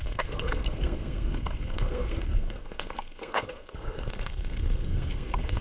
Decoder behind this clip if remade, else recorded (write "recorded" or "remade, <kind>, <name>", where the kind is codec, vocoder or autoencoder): remade, codec, SNAC